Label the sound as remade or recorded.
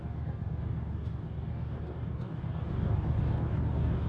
remade